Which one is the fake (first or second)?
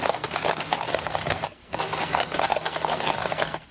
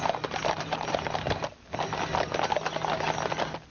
first